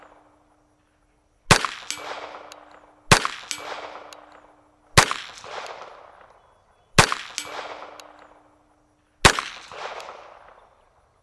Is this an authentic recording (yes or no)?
yes